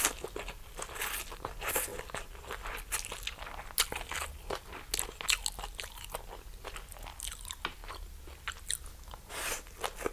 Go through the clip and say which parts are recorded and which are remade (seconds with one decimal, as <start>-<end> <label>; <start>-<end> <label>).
0.0-10.1 recorded